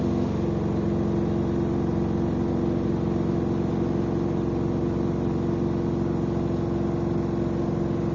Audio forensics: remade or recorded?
recorded